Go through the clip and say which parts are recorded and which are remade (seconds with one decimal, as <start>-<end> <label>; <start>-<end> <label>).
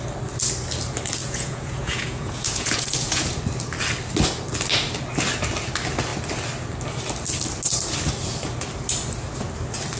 0.0-1.2 recorded; 1.2-3.3 remade; 3.3-10.0 recorded